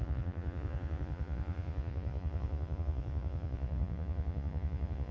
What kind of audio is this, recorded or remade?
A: remade